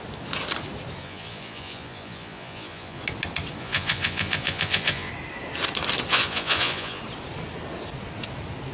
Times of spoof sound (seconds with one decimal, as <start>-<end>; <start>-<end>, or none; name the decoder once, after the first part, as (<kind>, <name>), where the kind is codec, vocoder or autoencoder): 1.0-3.0 (vocoder, Vocos); 3.6-5.1; 6.1-7.0